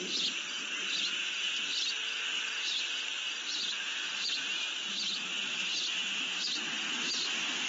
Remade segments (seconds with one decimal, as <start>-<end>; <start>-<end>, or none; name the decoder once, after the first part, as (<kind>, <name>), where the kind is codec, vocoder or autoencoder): 1.7-5.2 (vocoder, BigVGAN v2)